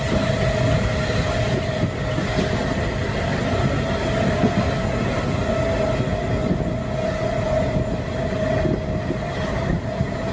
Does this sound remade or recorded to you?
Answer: recorded